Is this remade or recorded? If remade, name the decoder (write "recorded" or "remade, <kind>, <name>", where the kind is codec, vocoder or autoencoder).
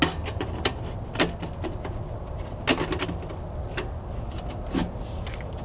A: recorded